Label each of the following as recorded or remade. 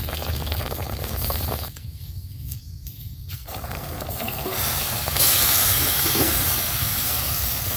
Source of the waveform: remade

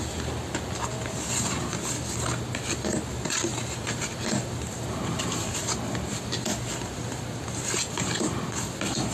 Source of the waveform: recorded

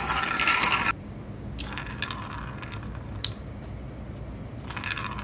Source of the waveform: recorded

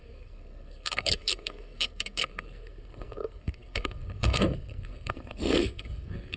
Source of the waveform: remade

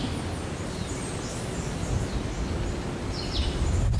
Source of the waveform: recorded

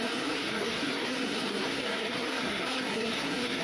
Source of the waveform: remade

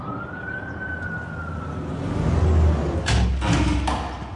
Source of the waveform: recorded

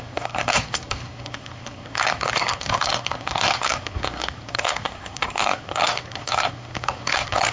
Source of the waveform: remade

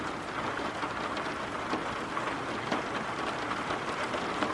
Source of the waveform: recorded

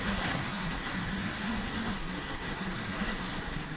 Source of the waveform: remade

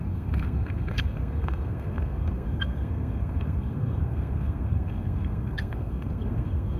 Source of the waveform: remade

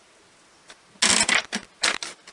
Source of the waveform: recorded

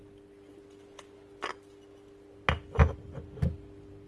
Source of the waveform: recorded